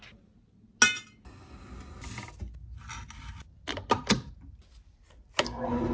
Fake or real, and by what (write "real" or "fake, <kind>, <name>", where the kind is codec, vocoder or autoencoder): real